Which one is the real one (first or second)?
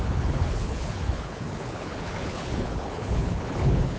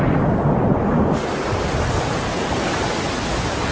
second